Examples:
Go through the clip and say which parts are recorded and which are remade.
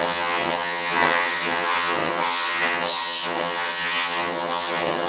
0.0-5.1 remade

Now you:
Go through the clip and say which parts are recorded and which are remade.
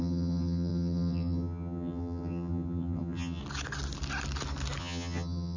0.0-3.4 remade; 3.4-4.8 recorded; 4.8-5.6 remade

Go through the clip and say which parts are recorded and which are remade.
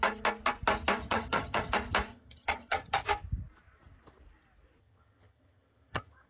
0.0-1.0 recorded; 1.0-1.7 remade; 1.7-2.1 recorded; 2.1-3.1 remade; 3.1-4.8 recorded; 4.8-6.3 remade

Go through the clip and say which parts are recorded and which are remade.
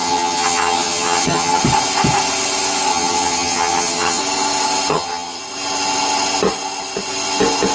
0.0-1.6 remade; 1.6-2.9 recorded; 2.9-4.2 remade; 4.2-4.9 recorded; 4.9-5.4 remade; 5.4-7.7 recorded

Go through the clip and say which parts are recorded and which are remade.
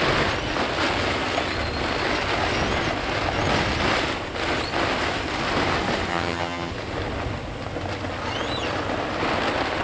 0.0-6.1 recorded; 6.1-6.7 remade; 6.7-9.8 recorded